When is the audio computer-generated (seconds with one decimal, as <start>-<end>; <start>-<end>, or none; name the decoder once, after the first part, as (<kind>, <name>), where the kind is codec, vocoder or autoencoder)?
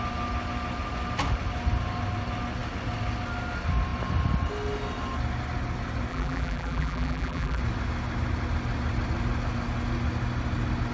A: 6.1-7.6 (vocoder, BigVGAN v2)